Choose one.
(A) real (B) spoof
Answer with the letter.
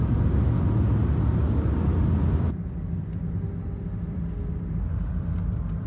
A